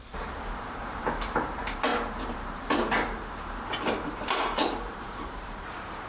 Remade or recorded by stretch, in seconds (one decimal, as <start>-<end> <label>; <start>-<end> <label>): 0.0-6.1 remade